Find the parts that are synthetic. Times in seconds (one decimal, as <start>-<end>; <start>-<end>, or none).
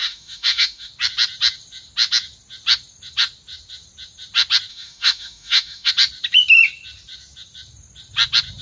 0.0-0.9; 4.7-5.9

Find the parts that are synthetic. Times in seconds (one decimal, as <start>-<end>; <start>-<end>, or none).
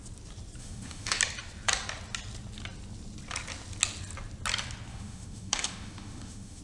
0.6-1.2; 4.9-6.6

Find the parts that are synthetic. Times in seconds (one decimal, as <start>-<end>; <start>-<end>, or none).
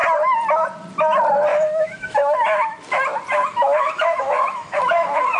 1.5-2.8; 3.3-5.4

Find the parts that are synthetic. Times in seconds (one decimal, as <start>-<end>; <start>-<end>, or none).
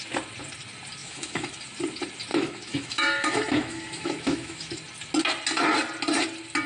1.0-1.6; 2.3-4.7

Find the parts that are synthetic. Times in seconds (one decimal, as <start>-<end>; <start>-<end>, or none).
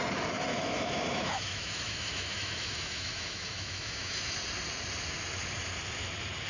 0.5-4.3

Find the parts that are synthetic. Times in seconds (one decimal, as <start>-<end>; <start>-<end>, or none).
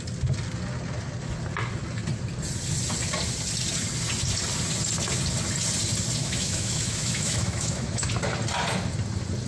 6.2-8.1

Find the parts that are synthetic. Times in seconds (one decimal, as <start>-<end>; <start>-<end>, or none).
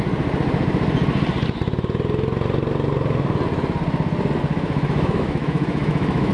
4.5-6.3